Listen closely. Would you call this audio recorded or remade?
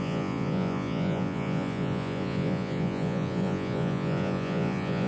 remade